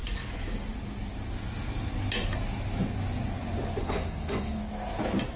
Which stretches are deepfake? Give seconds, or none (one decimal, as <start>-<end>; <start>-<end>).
3.8-4.6